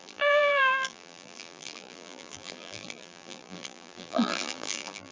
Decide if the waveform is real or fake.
fake